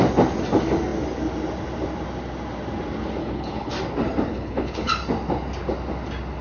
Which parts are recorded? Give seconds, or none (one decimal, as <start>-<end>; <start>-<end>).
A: 0.0-3.2; 3.7-4.3; 4.9-6.4